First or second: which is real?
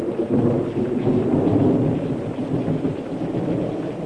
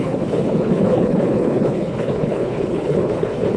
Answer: first